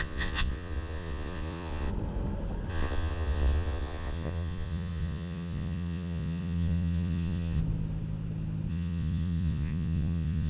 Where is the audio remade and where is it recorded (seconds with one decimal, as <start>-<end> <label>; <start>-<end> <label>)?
0.0-1.9 remade; 1.9-2.7 recorded; 2.7-7.6 remade; 7.6-8.7 recorded; 8.7-10.5 remade

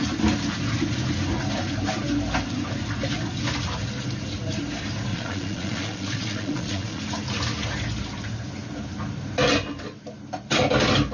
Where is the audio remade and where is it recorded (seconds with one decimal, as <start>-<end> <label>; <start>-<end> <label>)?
0.0-5.1 recorded; 5.1-7.0 remade; 7.0-11.1 recorded

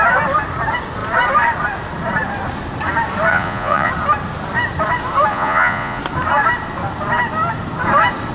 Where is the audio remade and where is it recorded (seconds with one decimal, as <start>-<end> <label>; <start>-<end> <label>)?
0.0-3.3 recorded; 3.3-3.9 remade; 3.9-5.3 recorded; 5.3-6.0 remade; 6.0-8.3 recorded

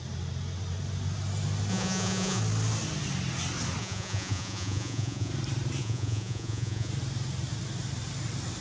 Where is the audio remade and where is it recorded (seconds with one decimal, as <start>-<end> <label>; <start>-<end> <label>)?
0.0-1.7 recorded; 1.7-2.4 remade; 2.4-3.8 recorded; 3.8-5.3 remade; 5.3-5.8 recorded; 5.8-6.9 remade; 6.9-8.6 recorded

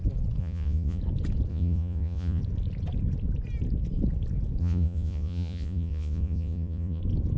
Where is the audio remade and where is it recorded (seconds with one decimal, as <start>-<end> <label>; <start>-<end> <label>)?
0.0-0.4 recorded; 0.4-1.0 remade; 1.0-1.5 recorded; 1.5-2.4 remade; 2.4-4.6 recorded; 4.6-7.0 remade; 7.0-7.4 recorded